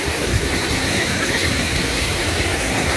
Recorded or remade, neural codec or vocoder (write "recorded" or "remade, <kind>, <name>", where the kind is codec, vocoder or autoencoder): remade, codec, SNAC